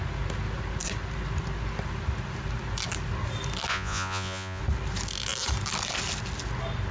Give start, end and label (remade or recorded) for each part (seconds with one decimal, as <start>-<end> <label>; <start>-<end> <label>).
0.0-3.7 recorded; 3.7-4.6 remade; 4.6-6.9 recorded